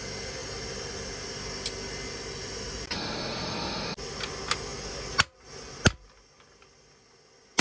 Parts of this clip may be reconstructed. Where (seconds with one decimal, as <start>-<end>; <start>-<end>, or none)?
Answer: none